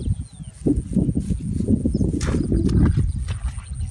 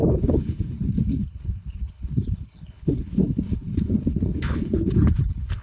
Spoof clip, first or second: second